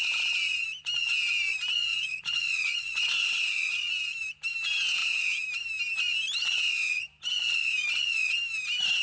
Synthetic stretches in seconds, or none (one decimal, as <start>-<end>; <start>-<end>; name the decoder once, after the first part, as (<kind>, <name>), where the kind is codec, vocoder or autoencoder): 1.9-3.9 (vocoder, Vocos)